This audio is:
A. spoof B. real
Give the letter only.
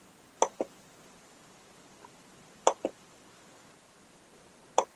B